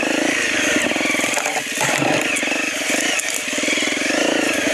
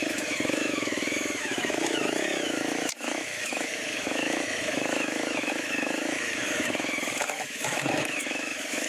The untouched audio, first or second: first